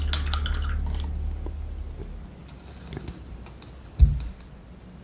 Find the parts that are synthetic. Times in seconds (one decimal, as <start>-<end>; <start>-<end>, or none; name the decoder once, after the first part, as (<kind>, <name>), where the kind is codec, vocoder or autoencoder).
none

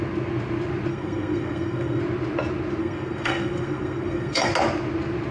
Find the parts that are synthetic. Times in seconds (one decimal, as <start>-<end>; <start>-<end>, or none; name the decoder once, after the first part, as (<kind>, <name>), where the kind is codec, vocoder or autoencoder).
0.9-2.0 (codec, SNAC); 2.8-4.5